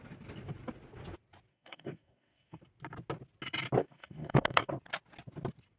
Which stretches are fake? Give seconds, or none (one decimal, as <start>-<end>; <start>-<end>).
1.5-2.6; 3.8-4.7